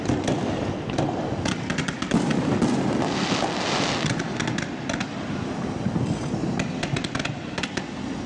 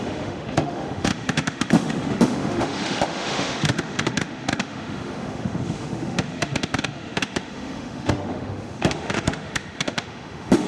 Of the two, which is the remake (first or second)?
second